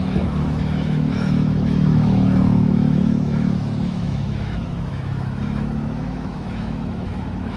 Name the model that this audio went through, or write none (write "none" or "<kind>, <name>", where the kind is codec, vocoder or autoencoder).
autoencoder, DAC-VAE